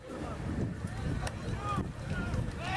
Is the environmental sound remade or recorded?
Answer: recorded